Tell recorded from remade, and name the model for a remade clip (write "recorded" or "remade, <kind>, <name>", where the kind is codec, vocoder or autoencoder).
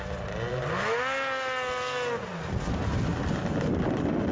recorded